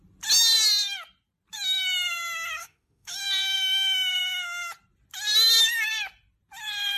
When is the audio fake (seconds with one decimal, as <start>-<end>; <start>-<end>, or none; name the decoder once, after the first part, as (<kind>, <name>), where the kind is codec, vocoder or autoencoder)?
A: 2.6-3.2 (autoencoder, DAC-VAE)